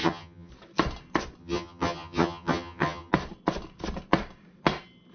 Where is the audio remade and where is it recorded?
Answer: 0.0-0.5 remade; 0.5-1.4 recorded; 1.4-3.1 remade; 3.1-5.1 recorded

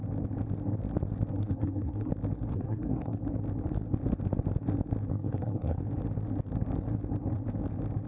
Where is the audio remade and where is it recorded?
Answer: 0.0-1.4 recorded; 1.4-2.1 remade; 2.1-2.5 recorded; 2.5-3.2 remade; 3.2-5.1 recorded; 5.1-5.8 remade; 5.8-8.1 recorded

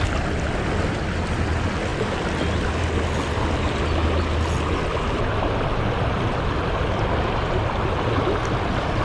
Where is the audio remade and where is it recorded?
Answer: 0.0-9.0 recorded

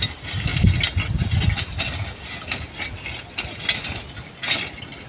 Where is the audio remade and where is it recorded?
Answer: 0.0-5.1 recorded

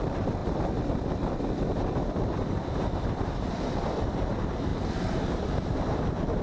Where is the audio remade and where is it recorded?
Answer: 0.0-0.4 recorded; 0.4-4.2 remade; 4.2-4.7 recorded; 4.7-6.4 remade

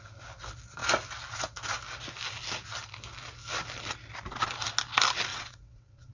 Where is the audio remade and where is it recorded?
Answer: 0.0-5.3 recorded; 5.3-6.1 remade